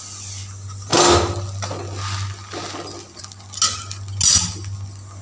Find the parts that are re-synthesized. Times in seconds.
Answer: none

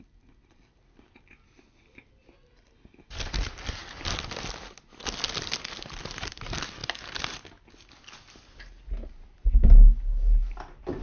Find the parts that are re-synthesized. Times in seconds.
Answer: none

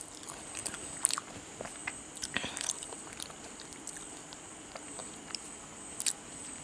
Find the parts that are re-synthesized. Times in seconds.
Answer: 1.8-5.5 (vocoder, BigVGAN v2)

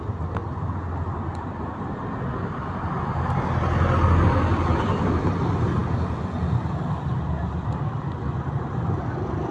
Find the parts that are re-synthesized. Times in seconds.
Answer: none

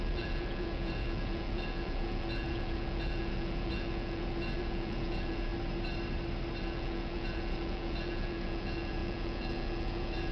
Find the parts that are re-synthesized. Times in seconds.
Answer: 0.0-5.5 (vocoder, Vocos); 6.6-10.3

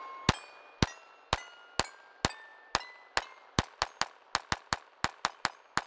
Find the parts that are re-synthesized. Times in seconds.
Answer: none